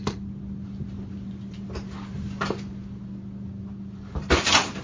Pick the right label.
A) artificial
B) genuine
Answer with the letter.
B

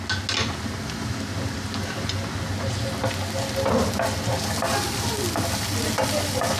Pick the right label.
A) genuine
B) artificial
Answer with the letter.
A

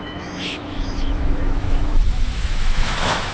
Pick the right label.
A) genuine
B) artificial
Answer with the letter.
B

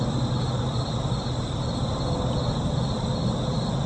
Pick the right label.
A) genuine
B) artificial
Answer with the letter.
A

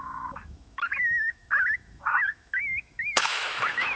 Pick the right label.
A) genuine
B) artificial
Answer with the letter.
B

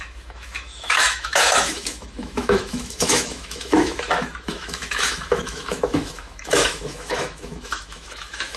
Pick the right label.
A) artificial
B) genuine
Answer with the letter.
A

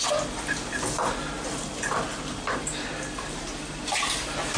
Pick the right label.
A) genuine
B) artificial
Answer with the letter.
A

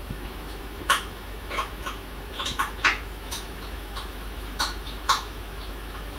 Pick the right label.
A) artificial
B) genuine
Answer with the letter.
A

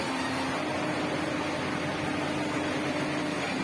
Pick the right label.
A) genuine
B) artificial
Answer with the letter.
A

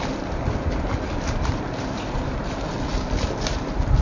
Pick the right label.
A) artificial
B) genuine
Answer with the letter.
B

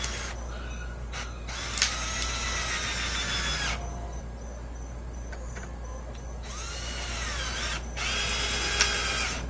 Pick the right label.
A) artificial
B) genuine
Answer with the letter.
B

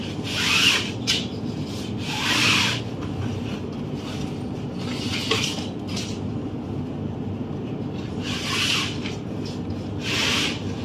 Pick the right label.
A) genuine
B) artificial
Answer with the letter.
A